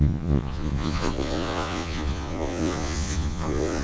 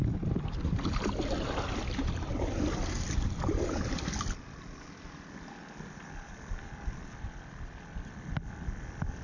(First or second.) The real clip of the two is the second